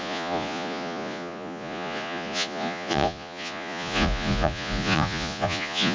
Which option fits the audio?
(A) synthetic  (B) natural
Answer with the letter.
A